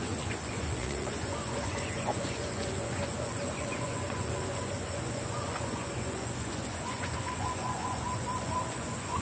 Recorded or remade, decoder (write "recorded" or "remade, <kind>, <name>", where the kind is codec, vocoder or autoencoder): remade, vocoder, Vocos